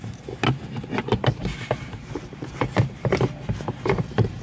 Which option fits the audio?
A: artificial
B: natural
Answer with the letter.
A